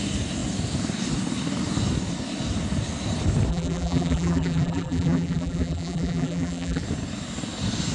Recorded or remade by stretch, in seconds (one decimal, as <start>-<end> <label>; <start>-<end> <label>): 0.0-3.5 recorded; 3.5-6.8 remade; 6.8-7.9 recorded

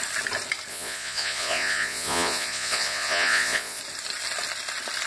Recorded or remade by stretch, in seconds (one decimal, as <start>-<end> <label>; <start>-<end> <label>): 0.0-0.7 recorded; 0.7-3.8 remade; 3.8-5.1 recorded